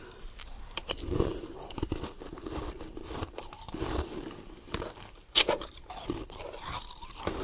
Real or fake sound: fake